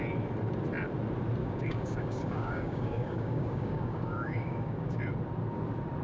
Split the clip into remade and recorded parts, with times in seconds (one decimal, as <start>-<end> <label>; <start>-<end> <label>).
0.0-1.4 recorded; 1.4-5.0 remade; 5.0-6.0 recorded